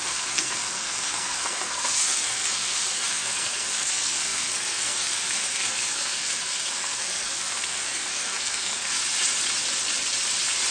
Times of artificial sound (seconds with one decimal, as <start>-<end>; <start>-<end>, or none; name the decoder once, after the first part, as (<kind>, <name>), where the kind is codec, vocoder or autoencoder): 0.0-9.0 (codec, SNAC)